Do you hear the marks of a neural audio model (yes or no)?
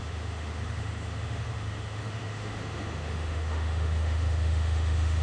yes